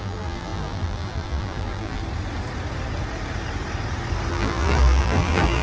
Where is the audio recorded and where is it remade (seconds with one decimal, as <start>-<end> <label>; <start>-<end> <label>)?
0.0-2.0 remade; 2.0-4.3 recorded; 4.3-5.6 remade